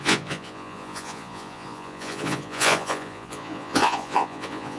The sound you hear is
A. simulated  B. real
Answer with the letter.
A